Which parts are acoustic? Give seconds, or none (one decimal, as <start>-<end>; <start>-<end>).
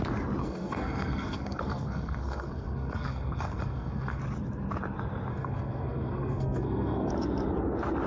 0.0-0.4; 4.2-5.3; 7.1-8.1